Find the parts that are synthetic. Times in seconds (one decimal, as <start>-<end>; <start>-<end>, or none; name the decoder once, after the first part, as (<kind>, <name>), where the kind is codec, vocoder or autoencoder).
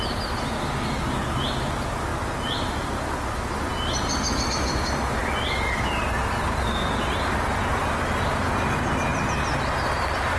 none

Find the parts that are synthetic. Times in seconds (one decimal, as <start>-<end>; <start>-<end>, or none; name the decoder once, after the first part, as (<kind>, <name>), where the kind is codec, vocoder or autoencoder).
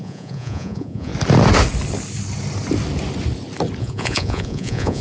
0.0-1.1 (vocoder, Vocos); 3.8-5.0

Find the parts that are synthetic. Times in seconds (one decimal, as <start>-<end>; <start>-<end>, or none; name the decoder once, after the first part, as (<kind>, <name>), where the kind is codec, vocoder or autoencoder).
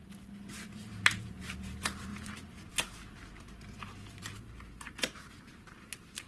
0.0-2.1 (vocoder, BigVGAN v2); 2.7-6.3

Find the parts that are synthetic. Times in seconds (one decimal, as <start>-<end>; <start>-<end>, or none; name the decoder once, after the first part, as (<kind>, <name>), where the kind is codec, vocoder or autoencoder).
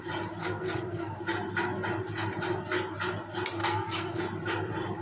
0.4-1.2 (codec, SNAC); 3.6-4.2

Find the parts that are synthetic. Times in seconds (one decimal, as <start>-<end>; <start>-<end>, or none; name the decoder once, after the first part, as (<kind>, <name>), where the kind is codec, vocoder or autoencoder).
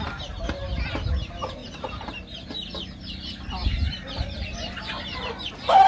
none